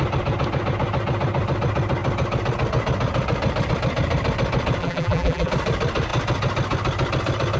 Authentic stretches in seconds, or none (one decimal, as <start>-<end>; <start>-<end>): 0.0-4.8; 5.5-7.6